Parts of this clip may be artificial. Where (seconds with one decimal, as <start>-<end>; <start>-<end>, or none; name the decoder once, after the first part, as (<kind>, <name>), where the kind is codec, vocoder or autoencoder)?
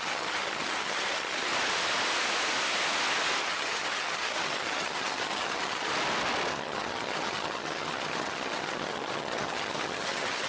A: 0.0-1.5 (vocoder, HiFi-GAN); 3.4-5.9; 6.5-10.5